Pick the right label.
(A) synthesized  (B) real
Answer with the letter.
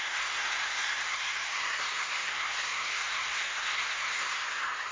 A